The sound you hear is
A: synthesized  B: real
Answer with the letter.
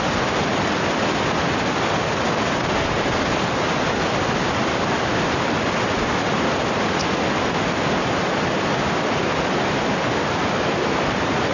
B